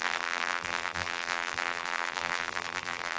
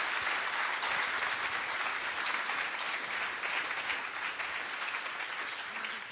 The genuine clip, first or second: second